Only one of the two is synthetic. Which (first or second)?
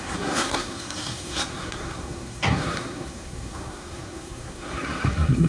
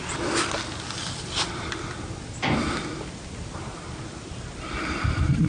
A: first